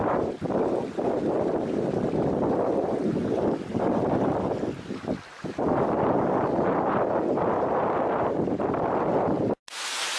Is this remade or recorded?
recorded